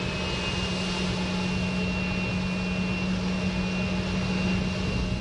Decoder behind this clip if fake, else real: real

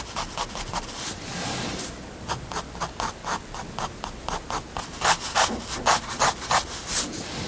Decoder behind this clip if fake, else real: real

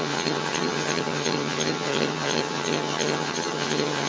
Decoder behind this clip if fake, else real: fake, vocoder, HiFi-GAN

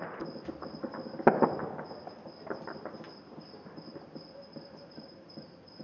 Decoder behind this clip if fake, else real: real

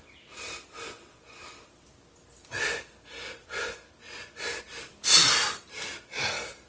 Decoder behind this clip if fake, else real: real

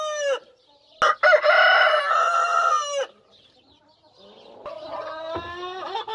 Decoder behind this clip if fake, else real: real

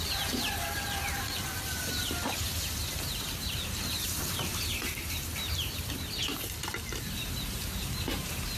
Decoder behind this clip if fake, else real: fake, vocoder, BigVGAN v2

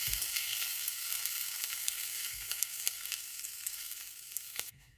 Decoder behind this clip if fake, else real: fake, codec, SNAC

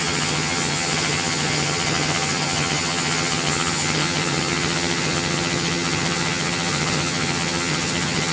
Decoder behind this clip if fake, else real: fake, vocoder, HiFi-GAN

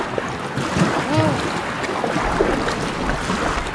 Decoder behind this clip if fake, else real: real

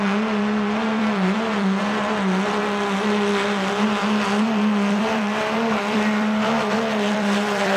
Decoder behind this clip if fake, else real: fake, vocoder, BigVGAN v2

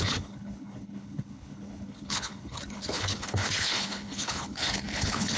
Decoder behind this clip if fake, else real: fake, codec, HILCodec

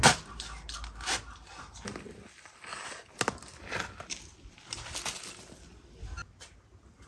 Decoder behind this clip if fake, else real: real